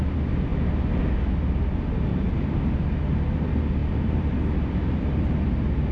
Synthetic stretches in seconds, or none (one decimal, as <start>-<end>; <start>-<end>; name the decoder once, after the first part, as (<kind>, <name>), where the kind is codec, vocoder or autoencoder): 2.1-2.7 (vocoder, BigVGAN v2); 3.8-5.4